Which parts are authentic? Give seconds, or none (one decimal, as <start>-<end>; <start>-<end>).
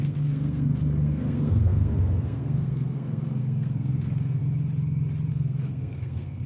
4.4-5.3